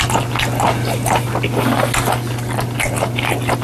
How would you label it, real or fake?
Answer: real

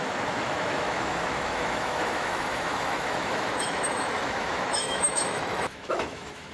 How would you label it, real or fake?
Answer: fake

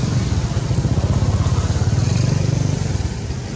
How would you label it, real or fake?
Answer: real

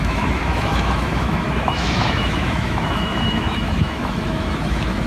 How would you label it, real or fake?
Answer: fake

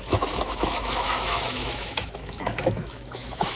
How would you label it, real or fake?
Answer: fake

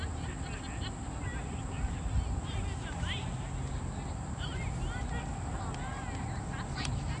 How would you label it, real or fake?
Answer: real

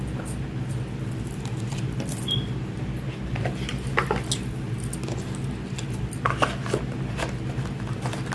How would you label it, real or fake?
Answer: real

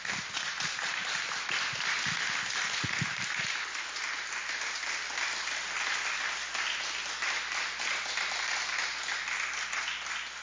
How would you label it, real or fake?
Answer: real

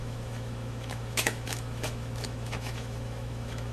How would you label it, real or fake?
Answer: fake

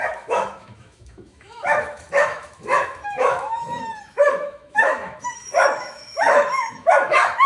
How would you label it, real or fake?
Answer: fake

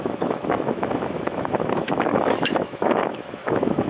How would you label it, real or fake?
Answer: fake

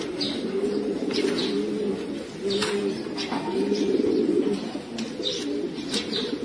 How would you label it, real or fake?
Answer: real